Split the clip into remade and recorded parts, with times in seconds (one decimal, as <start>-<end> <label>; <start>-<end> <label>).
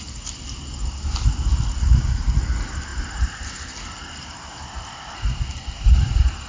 0.0-6.5 recorded